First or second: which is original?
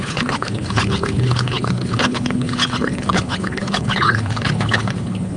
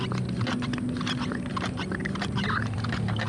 second